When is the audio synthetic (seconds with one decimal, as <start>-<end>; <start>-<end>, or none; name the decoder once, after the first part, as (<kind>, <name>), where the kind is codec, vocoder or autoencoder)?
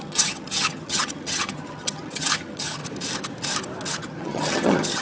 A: 0.0-2.8 (vocoder, HiFi-GAN); 3.9-5.0